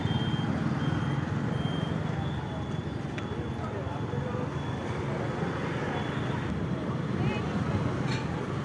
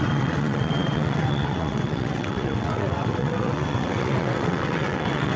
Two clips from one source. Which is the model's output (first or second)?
second